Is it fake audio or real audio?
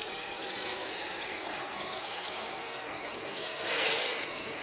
fake